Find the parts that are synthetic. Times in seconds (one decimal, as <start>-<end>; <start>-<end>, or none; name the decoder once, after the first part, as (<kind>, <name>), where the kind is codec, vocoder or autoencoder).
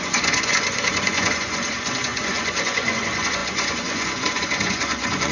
0.0-5.3 (vocoder, Vocos)